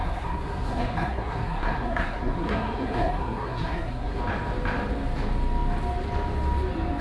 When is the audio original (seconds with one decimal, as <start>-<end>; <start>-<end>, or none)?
4.2-7.0